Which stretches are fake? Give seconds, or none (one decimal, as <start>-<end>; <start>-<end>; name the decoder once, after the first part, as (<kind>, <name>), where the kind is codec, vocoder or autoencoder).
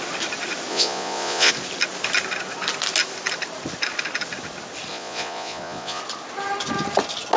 0.7-1.5 (vocoder, Vocos); 4.9-6.0